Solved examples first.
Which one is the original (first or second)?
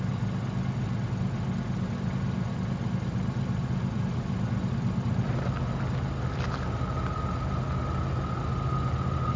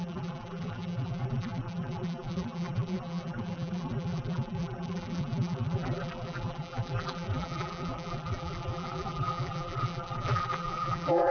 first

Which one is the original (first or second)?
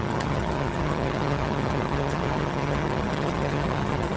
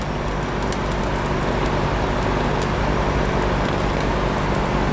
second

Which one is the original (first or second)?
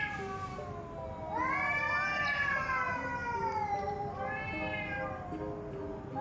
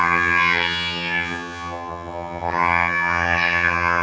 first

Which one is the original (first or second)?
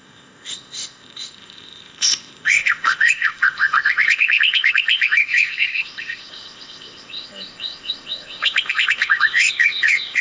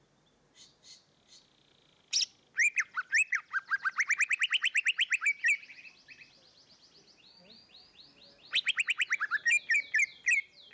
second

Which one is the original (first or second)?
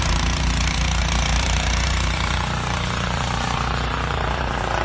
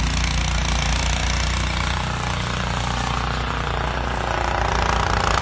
second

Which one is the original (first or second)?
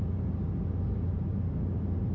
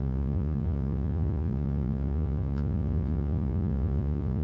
first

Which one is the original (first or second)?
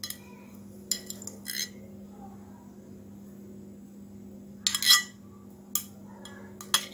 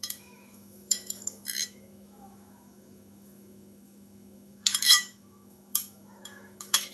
first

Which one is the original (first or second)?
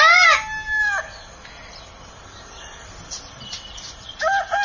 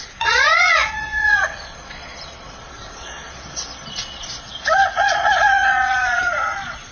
first